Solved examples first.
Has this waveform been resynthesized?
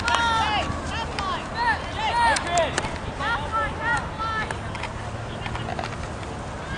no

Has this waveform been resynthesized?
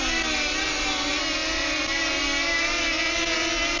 no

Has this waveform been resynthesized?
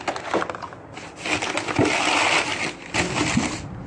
no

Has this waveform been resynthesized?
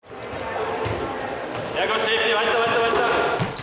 no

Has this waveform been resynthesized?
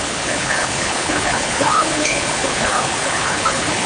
yes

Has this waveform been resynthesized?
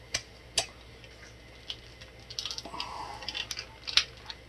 no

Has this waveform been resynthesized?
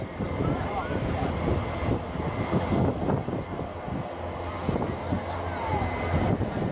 no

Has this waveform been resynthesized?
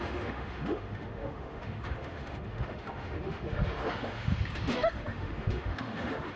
yes